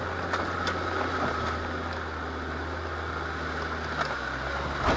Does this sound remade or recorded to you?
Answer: recorded